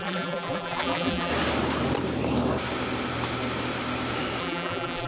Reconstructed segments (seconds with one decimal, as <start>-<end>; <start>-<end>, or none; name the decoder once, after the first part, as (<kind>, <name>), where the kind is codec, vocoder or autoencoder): 0.0-1.3 (vocoder, BigVGAN v2); 4.4-5.1